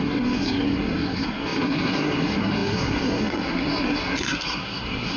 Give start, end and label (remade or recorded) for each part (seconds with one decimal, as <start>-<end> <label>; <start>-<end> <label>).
0.0-5.2 remade